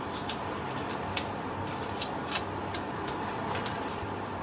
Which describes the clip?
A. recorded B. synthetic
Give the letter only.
A